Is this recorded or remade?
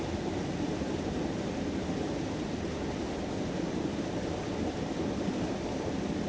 recorded